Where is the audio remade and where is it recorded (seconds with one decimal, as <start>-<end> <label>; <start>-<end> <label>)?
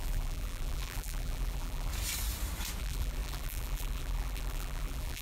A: 0.0-1.9 remade; 1.9-2.8 recorded; 2.8-5.2 remade